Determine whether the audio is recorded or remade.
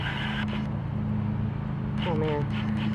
recorded